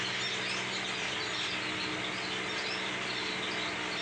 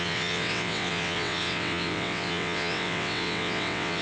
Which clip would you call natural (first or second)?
first